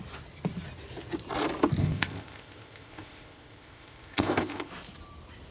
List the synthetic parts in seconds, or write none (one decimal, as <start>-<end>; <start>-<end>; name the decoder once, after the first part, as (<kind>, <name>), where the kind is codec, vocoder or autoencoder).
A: 1.8-4.7 (codec, ZipCodec)